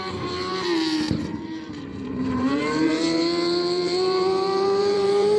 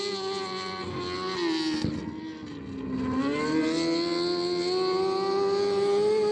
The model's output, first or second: first